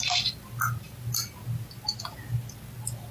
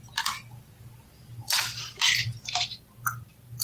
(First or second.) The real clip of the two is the first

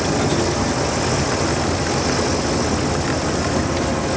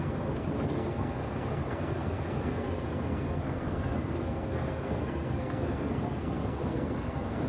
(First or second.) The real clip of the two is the first